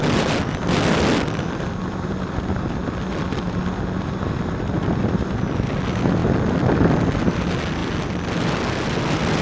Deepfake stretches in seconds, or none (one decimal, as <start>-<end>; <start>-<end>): none